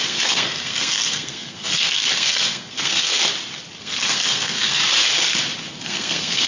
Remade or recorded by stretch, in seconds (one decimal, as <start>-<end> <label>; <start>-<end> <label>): 0.0-3.2 remade; 3.2-3.8 recorded; 3.8-4.8 remade; 4.8-5.8 recorded; 5.8-6.5 remade